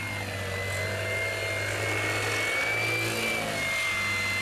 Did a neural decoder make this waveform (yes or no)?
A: no